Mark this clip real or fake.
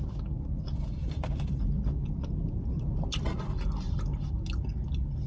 real